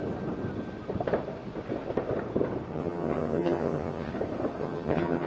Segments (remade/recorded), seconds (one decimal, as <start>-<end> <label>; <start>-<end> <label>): 0.0-2.7 recorded; 2.7-4.1 remade; 4.1-4.6 recorded; 4.6-5.3 remade